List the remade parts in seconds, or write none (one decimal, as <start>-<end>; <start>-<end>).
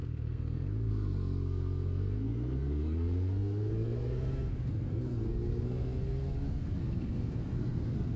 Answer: 0.0-8.2